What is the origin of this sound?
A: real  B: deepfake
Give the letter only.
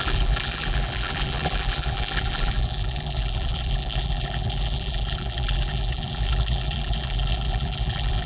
B